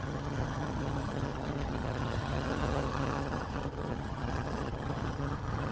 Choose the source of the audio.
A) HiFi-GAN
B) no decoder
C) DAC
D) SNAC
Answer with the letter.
A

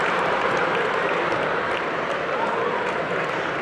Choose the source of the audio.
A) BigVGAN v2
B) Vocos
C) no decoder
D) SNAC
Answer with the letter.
A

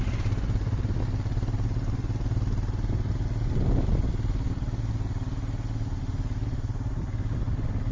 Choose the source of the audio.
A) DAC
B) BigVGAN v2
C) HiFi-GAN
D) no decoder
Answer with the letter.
D